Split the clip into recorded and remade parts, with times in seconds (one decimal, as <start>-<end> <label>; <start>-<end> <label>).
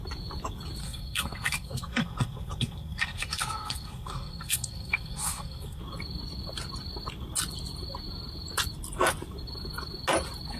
0.0-0.8 recorded; 0.8-5.8 remade; 5.8-10.6 recorded